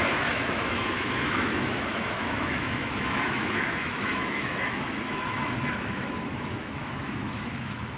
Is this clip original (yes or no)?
no